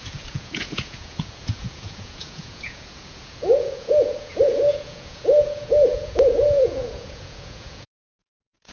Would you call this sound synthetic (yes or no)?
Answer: yes